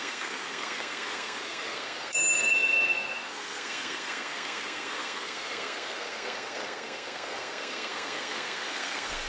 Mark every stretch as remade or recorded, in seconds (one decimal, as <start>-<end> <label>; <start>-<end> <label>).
0.0-9.3 remade